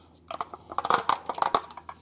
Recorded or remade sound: recorded